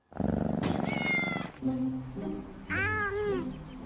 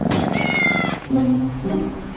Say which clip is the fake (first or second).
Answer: second